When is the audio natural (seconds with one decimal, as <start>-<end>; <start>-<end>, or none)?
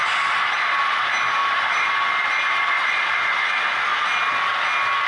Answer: 3.9-5.1